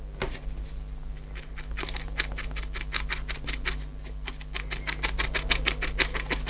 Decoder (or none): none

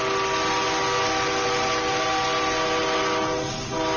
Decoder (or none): none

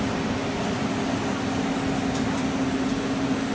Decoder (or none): none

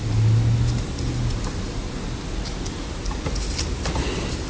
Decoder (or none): none